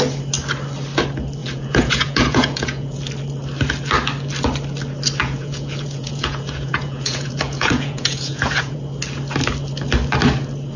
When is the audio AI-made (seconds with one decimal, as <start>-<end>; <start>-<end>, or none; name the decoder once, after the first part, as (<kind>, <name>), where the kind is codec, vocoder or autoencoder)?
1.4-3.0 (vocoder, Vocos); 5.2-8.8